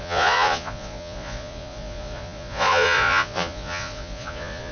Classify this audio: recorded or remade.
remade